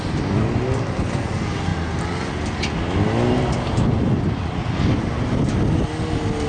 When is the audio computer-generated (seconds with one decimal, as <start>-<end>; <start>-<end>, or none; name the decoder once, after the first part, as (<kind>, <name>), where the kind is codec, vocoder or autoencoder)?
none